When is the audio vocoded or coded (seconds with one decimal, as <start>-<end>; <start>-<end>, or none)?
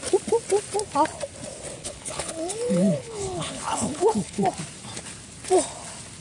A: 1.8-4.5